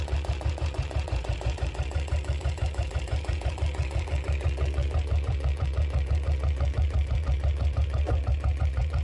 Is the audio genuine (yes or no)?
no